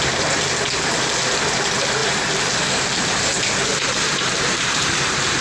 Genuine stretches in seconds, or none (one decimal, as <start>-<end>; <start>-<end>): 0.0-2.0